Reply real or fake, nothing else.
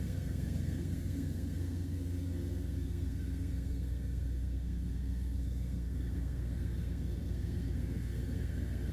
fake